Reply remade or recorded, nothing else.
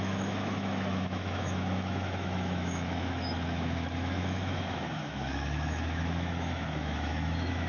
remade